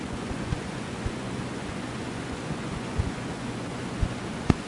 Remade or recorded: remade